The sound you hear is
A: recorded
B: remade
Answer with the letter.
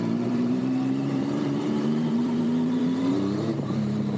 B